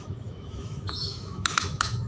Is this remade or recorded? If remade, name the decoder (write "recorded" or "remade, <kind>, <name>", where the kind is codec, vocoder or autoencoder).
remade, autoencoder, DAC-VAE